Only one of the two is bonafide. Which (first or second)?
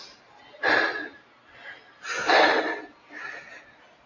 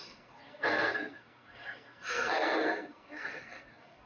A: first